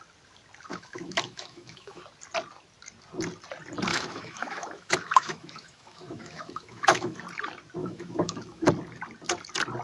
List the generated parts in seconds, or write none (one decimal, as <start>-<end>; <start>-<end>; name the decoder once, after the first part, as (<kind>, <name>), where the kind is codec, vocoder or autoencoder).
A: 0.7-2.0 (autoencoder, DAC-VAE); 3.9-7.2; 7.8-8.7